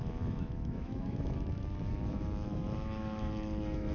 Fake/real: fake